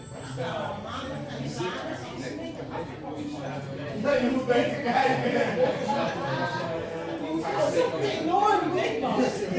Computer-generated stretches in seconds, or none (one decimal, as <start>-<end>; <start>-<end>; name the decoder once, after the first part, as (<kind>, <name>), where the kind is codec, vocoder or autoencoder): 0.0-9.6 (vocoder, BigVGAN v2)